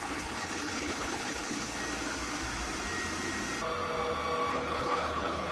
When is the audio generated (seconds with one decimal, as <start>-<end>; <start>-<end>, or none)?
0.0-1.8; 4.5-5.5